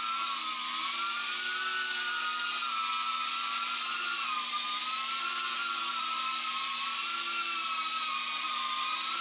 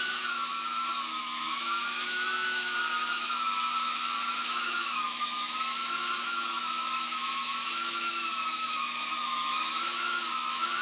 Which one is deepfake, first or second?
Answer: second